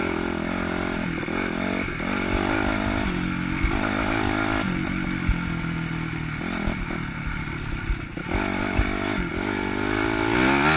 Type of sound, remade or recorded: recorded